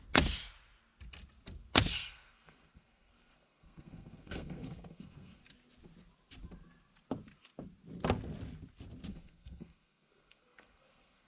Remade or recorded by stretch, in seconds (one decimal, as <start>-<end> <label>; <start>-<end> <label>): 0.0-1.9 recorded; 1.9-5.4 remade; 5.4-9.1 recorded; 9.1-11.3 remade